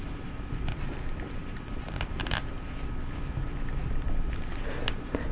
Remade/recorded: recorded